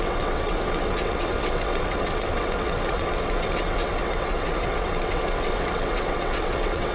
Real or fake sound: fake